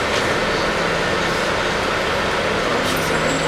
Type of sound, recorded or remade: recorded